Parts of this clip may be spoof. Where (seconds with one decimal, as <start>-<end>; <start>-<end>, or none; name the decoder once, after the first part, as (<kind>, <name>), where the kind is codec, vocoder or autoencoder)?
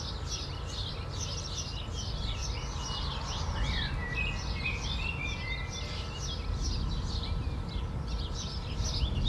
none